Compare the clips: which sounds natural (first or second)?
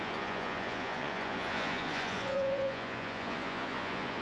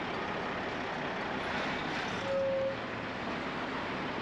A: second